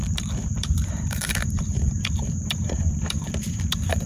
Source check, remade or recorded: remade